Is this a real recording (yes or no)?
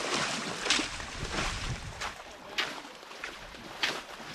yes